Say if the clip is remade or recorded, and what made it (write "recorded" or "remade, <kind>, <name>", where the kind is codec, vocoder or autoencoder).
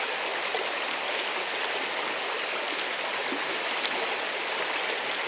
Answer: recorded